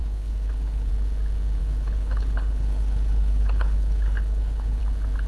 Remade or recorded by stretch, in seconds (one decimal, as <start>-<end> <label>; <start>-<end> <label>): 0.0-0.9 remade; 0.9-1.6 recorded; 1.6-4.8 remade; 4.8-5.3 recorded